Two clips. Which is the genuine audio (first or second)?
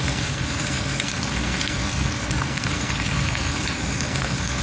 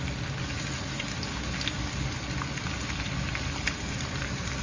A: second